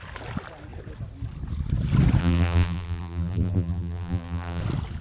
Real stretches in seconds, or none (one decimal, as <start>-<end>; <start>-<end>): 0.0-2.2; 4.6-5.0